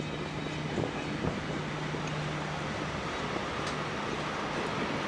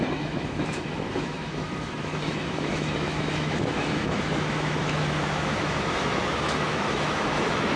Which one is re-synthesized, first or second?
second